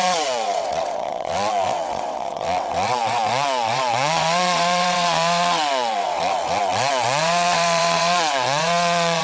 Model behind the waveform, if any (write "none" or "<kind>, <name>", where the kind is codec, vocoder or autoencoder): vocoder, WaveNeXt